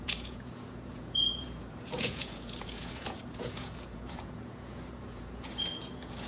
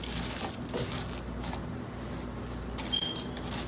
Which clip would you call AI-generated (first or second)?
first